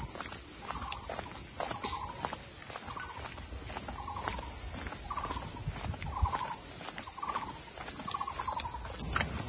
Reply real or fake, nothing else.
real